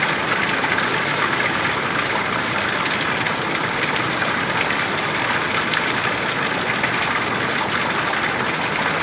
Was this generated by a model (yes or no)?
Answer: no